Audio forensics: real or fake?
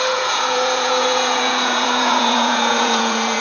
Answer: fake